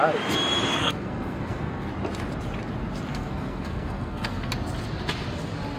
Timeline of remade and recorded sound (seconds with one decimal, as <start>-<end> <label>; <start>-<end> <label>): 0.0-0.7 recorded; 0.7-1.9 remade; 1.9-3.1 recorded; 3.1-4.5 remade; 4.5-5.8 recorded

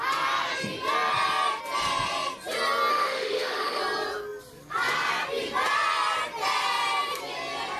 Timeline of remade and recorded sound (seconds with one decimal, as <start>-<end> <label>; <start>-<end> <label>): 0.0-2.9 recorded; 2.9-3.8 remade; 3.8-7.8 recorded

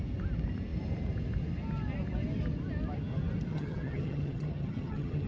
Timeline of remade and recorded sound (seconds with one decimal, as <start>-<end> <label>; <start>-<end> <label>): 0.0-3.5 recorded; 3.5-5.3 remade

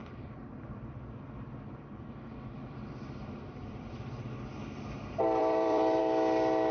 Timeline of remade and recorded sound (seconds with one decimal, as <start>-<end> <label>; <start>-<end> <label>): 0.0-4.0 remade; 4.0-5.4 recorded; 5.4-6.0 remade; 6.0-6.7 recorded

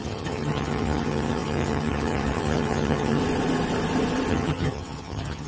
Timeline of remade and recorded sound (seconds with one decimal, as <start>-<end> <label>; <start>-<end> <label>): 0.0-3.2 remade; 3.2-4.3 recorded; 4.3-5.5 remade